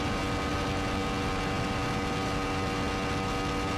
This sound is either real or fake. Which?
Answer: real